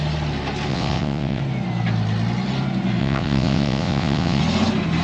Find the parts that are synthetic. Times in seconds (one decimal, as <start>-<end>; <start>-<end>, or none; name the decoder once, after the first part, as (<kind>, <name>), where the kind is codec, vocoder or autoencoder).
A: 0.7-1.4 (vocoder, WaveNeXt); 3.0-4.4